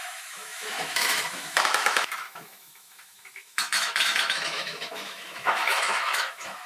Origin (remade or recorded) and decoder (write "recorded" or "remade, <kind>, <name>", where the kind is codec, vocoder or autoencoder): remade, autoencoder, DAC-VAE